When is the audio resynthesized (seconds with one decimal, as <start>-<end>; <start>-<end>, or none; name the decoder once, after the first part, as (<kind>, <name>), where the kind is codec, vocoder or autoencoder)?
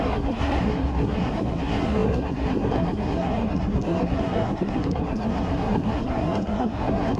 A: 0.0-7.2 (codec, SNAC)